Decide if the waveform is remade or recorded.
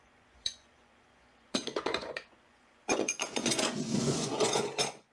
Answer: remade